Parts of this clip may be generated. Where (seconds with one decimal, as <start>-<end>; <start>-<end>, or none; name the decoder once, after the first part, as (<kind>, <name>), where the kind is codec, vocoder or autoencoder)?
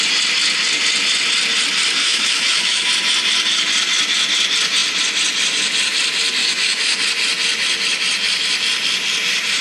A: 2.0-2.9 (autoencoder, DAC-VAE); 6.4-7.0